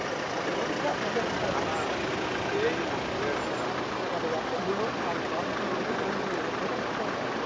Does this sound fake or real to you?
real